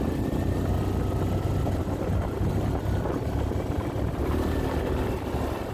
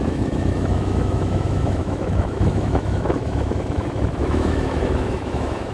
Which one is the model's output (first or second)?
second